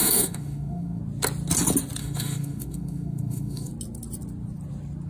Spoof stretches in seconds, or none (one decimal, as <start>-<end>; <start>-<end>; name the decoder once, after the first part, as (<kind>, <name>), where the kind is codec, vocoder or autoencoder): 0.0-1.0 (autoencoder, DAC-VAE); 2.0-3.7